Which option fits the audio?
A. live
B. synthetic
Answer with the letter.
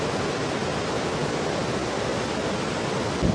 A